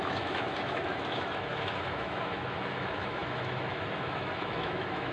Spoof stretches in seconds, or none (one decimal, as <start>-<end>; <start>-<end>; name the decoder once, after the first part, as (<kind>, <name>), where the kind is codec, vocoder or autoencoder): 0.0-5.1 (autoencoder, DAC-VAE)